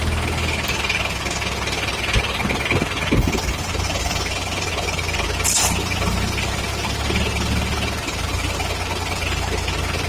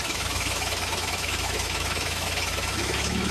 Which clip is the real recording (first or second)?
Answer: first